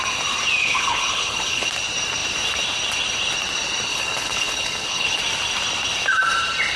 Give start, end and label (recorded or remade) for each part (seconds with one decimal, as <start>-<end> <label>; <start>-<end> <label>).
0.0-0.6 recorded; 0.6-1.7 remade; 1.7-3.9 recorded; 3.9-5.2 remade; 5.2-6.8 recorded